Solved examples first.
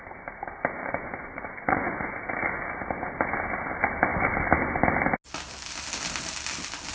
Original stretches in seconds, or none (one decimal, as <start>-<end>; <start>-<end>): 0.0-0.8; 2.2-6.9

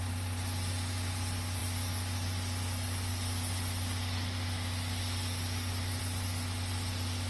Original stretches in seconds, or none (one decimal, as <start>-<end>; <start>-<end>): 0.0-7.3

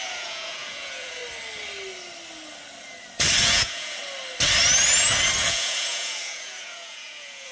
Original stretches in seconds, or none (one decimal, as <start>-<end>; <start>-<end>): 1.2-3.4; 4.0-5.4